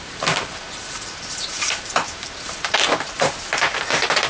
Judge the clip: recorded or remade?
remade